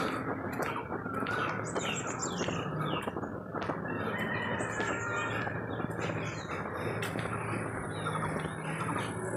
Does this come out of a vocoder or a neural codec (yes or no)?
no